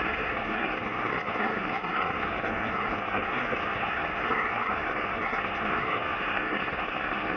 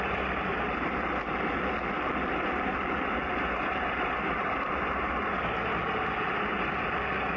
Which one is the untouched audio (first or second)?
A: second